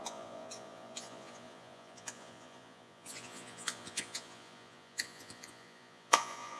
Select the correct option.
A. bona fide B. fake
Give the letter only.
B